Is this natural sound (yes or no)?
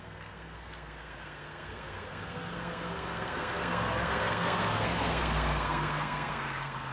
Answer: no